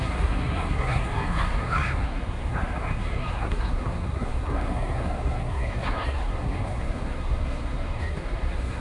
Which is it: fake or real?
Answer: fake